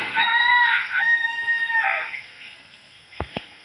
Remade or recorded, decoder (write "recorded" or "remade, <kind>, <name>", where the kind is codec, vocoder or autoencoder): remade, codec, SNAC